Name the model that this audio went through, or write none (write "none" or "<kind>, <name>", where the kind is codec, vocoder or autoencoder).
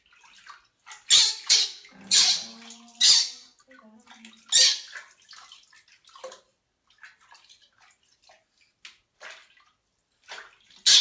none